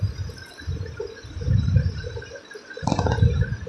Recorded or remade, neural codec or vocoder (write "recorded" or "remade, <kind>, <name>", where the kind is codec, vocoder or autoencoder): recorded